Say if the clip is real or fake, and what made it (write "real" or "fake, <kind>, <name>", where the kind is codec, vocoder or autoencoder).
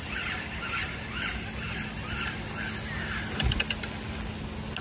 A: real